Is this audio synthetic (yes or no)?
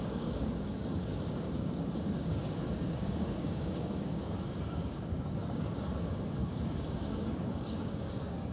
yes